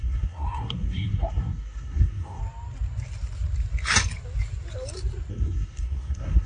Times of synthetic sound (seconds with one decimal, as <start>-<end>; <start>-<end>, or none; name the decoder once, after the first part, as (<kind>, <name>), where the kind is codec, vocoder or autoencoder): 0.0-2.4 (codec, SNAC); 5.3-6.5